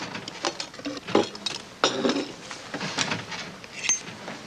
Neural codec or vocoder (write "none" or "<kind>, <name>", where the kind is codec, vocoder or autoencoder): none